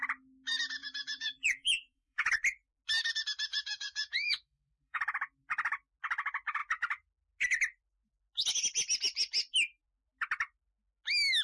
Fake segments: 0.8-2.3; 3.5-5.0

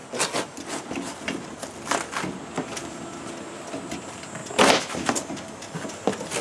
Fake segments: none